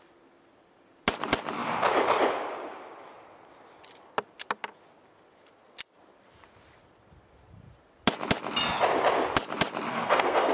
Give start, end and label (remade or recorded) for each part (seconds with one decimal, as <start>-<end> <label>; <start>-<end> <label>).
0.0-9.9 recorded; 9.9-10.5 remade